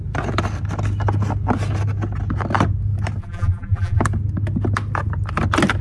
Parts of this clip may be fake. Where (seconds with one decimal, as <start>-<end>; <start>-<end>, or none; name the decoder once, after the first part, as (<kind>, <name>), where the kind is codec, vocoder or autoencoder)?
3.2-4.0 (vocoder, BigVGAN v2)